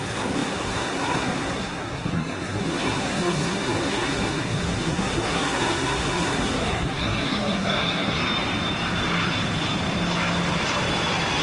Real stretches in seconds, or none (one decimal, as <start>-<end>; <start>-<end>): 8.2-11.4